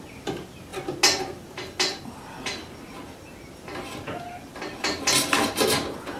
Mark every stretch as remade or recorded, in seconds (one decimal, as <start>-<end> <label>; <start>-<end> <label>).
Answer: 0.0-6.2 recorded